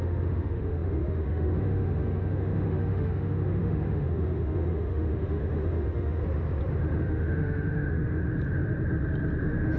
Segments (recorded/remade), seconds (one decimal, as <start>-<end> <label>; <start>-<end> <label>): 0.0-6.2 remade; 6.2-7.0 recorded; 7.0-8.2 remade; 8.2-9.4 recorded; 9.4-9.8 remade